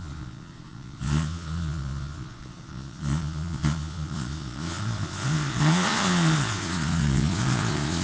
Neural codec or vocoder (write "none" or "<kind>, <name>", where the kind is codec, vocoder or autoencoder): vocoder, Vocos